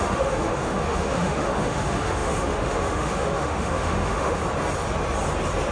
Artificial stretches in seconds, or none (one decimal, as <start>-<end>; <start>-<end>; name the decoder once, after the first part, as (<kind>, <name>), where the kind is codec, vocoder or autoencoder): 0.0-4.4 (autoencoder, DAC-VAE)